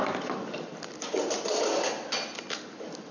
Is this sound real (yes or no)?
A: yes